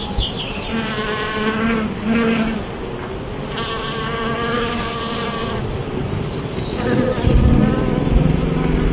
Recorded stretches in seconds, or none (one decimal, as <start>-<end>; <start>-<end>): 0.0-4.5; 5.0-8.9